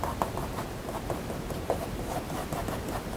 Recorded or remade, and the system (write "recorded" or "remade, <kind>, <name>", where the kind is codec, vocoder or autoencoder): remade, vocoder, BigVGAN v2